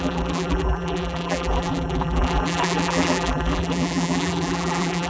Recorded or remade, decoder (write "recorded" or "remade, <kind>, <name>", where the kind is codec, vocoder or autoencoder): remade, vocoder, BigVGAN v2